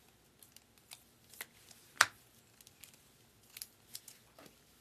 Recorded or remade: recorded